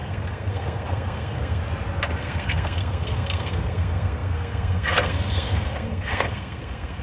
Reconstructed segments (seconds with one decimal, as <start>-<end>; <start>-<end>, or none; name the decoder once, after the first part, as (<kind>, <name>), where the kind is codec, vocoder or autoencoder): 0.0-1.6 (codec, SNAC); 2.2-7.0